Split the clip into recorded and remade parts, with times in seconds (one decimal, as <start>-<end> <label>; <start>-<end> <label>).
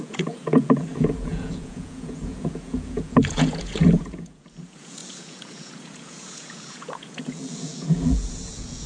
0.0-8.9 remade